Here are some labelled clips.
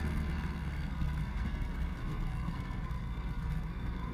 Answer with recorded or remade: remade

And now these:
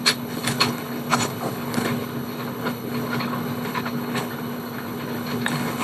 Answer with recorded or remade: remade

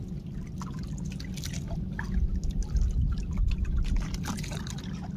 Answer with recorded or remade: recorded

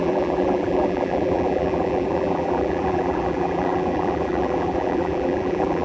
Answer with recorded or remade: remade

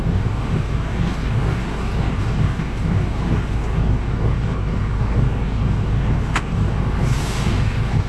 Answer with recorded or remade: remade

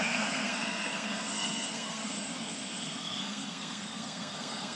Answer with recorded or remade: remade